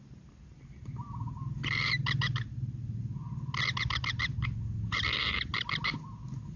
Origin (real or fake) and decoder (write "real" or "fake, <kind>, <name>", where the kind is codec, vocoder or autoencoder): real